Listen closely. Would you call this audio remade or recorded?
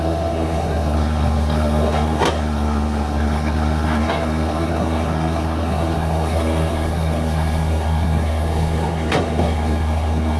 remade